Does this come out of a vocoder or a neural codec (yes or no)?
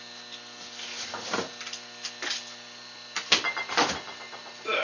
no